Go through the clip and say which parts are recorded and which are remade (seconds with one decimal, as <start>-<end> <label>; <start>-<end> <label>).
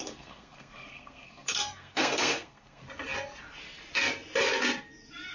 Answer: 0.0-2.8 remade; 2.8-5.3 recorded